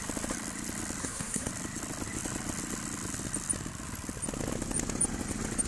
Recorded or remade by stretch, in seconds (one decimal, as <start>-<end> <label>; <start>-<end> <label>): 0.0-1.0 recorded; 1.0-1.5 remade; 1.5-5.7 recorded